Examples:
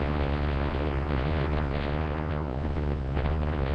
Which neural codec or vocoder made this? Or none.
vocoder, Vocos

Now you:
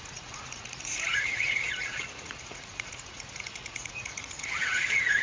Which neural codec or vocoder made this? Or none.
vocoder, Vocos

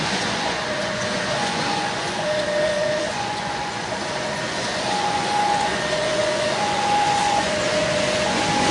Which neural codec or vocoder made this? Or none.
vocoder, Vocos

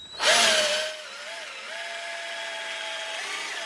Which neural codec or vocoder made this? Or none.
none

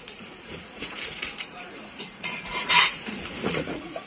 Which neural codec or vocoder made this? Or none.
vocoder, Vocos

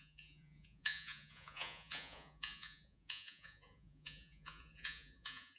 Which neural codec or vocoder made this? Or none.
vocoder, Vocos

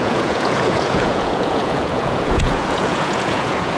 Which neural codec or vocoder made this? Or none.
vocoder, Vocos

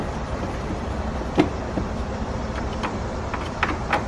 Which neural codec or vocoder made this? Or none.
none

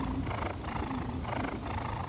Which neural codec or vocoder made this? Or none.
none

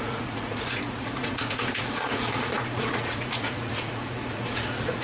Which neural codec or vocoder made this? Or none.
vocoder, Vocos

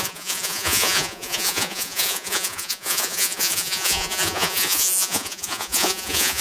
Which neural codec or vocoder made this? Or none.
vocoder, Vocos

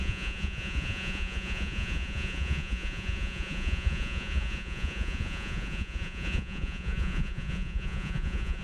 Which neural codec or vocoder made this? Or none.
vocoder, Vocos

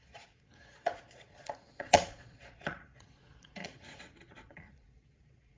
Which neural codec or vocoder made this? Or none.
vocoder, Vocos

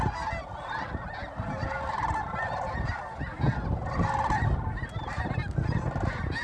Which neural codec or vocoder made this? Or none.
none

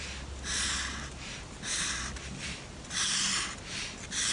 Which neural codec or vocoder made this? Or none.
none